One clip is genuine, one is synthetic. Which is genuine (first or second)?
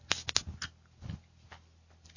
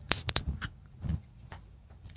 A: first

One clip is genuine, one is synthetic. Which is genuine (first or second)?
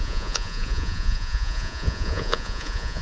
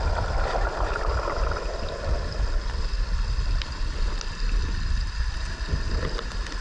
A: second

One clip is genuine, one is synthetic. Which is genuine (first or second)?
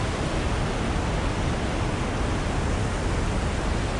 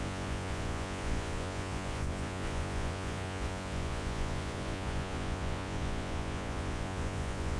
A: first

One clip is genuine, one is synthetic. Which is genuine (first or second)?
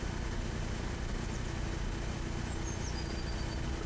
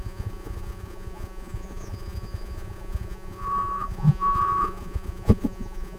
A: first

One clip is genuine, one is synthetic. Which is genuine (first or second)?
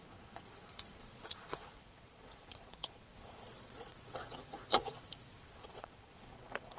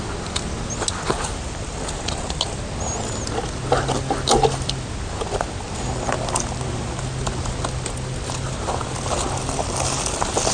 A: second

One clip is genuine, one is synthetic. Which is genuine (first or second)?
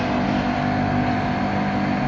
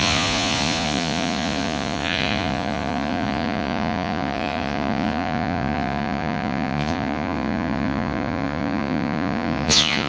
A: first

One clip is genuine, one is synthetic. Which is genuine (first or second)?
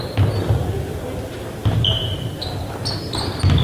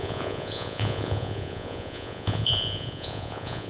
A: first